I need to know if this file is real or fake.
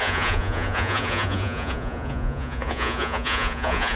fake